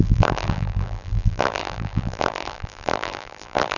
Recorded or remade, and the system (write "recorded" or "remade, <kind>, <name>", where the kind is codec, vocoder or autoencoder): remade, vocoder, BigVGAN v2